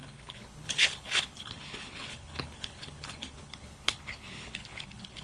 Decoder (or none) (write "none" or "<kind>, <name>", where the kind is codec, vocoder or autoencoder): codec, HILCodec